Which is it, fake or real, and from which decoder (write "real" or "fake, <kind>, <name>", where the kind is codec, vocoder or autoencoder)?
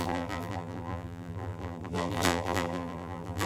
fake, vocoder, BigVGAN v2